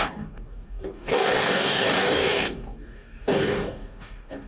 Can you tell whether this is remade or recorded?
remade